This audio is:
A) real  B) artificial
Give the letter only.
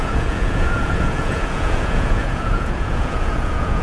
B